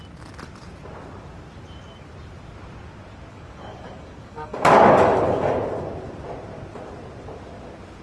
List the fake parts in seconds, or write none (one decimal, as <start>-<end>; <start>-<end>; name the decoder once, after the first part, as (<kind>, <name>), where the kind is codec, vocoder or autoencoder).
3.3-5.6 (codec, DAC)